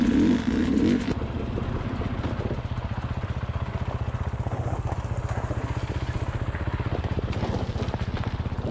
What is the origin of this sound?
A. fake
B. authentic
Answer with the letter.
B